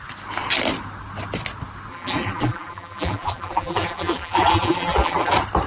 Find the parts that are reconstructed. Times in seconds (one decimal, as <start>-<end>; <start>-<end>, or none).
1.9-5.3